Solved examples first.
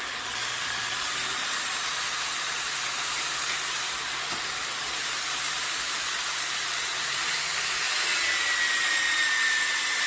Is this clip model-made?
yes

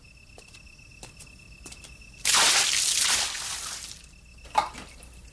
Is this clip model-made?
no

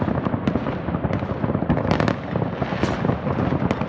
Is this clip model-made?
no